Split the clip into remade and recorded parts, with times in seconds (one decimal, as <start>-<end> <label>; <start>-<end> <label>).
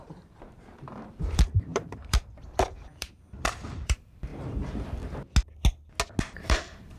0.0-4.3 remade; 4.3-6.2 recorded; 6.2-7.0 remade